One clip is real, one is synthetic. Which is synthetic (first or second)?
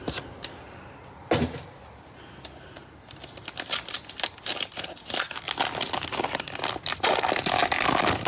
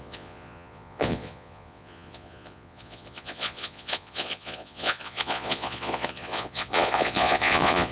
second